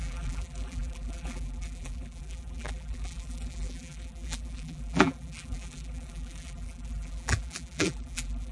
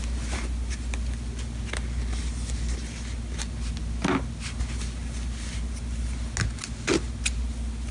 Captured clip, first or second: second